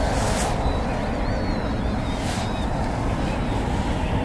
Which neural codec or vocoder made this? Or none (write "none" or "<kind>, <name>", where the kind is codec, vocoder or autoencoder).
none